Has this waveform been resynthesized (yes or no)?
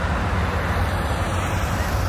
no